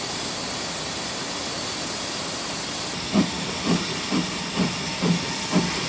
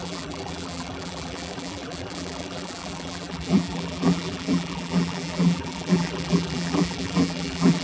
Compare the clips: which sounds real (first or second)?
first